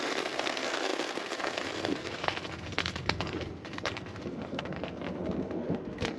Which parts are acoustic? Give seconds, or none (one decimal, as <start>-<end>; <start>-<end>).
none